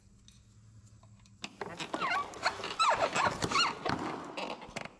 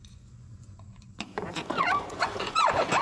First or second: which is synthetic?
second